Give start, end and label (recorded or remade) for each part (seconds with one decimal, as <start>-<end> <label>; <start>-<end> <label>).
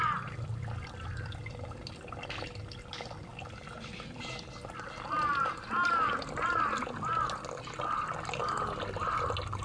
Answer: 0.0-9.6 recorded